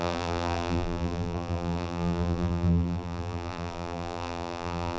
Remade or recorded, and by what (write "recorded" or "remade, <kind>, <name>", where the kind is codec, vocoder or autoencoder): remade, vocoder, BigVGAN v2